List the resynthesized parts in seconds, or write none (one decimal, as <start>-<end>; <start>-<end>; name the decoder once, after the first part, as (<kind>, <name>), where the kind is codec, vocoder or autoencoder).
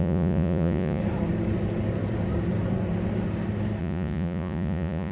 0.0-1.0 (vocoder, Vocos); 3.8-5.1